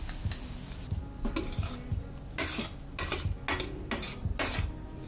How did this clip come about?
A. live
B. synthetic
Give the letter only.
A